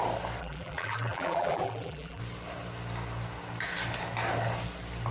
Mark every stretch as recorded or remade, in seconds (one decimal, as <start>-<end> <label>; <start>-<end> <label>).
0.0-0.4 recorded; 0.4-2.2 remade; 2.2-5.1 recorded